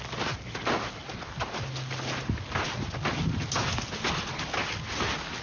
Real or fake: real